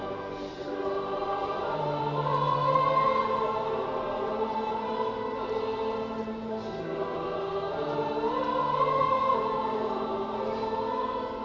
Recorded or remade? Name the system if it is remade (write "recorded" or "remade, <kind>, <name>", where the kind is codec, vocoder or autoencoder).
remade, vocoder, BigVGAN v2